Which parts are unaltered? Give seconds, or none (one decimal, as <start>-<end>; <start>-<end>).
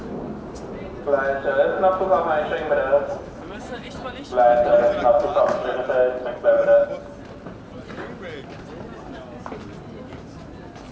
0.0-10.9